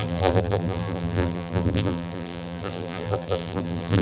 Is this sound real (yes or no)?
no